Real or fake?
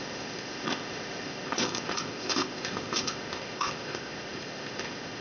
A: fake